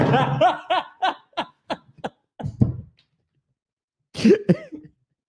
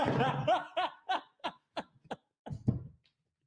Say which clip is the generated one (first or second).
second